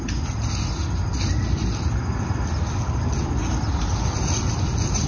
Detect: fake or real real